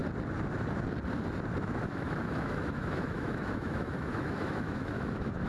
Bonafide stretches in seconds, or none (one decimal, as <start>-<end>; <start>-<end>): 0.0-1.6

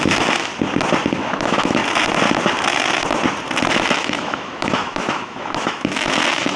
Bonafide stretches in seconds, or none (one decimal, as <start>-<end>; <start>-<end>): 0.5-1.1; 1.8-3.7

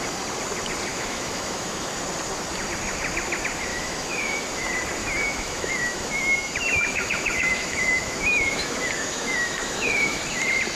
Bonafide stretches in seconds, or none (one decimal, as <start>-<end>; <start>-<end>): 0.0-0.9; 1.9-3.7; 4.4-5.0; 10.2-10.7

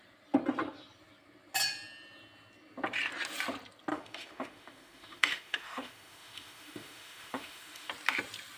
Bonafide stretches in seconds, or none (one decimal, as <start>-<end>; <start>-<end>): 0.0-3.9; 7.9-8.6

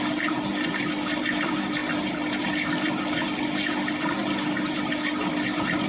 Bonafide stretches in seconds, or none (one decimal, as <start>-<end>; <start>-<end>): 0.0-5.9

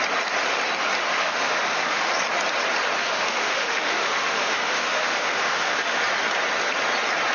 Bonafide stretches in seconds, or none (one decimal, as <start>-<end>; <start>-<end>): 0.0-1.1; 2.1-3.0; 6.0-7.3

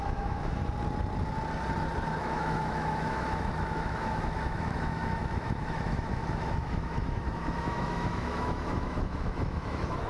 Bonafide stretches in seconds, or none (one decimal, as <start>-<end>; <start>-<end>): 0.6-2.2